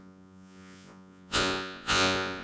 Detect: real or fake fake